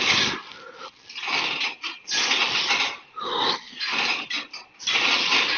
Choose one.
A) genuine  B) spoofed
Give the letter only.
A